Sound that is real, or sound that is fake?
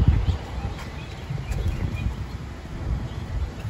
fake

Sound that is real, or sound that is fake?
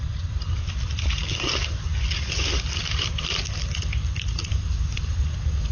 real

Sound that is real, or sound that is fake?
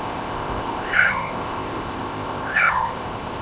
fake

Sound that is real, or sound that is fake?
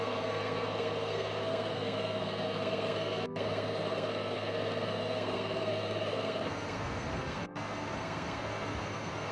fake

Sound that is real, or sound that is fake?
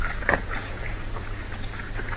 fake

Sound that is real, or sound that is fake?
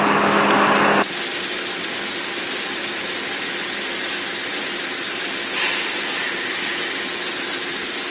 real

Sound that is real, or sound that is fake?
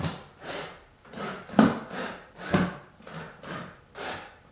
real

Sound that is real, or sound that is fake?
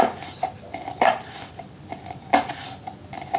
real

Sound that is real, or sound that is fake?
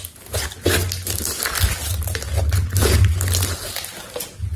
real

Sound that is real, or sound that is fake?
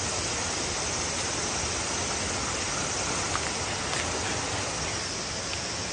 real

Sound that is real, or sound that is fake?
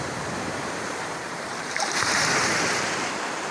fake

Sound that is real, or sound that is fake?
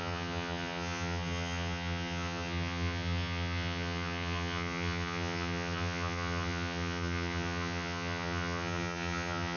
fake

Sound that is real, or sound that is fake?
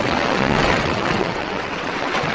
fake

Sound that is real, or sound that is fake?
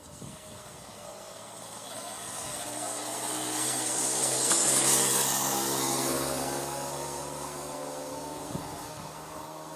fake